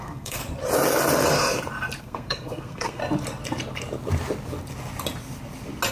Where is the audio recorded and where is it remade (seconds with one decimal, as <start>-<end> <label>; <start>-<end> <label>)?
0.0-0.4 remade; 0.4-2.0 recorded; 2.0-3.0 remade; 3.0-5.9 recorded